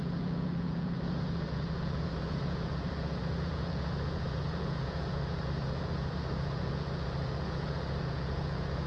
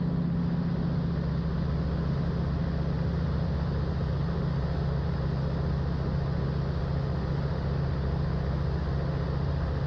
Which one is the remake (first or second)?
first